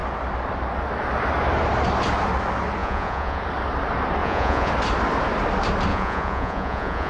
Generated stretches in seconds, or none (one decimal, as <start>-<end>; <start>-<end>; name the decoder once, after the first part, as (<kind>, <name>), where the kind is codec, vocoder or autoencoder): 2.8-3.4 (vocoder, Vocos); 4.2-4.7; 5.9-7.1